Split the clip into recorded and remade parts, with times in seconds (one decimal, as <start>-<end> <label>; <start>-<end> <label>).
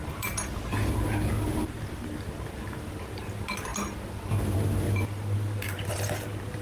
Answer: 0.0-6.6 recorded